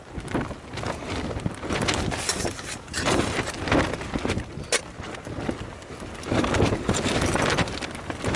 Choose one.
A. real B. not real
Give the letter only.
A